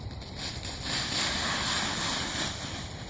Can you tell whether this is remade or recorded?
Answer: recorded